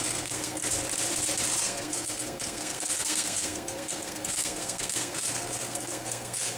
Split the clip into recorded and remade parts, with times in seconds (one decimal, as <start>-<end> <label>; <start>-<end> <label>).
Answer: 0.0-0.6 remade; 0.6-1.6 recorded; 1.6-6.6 remade